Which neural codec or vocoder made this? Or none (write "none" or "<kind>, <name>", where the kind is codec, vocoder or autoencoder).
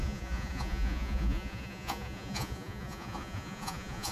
vocoder, Vocos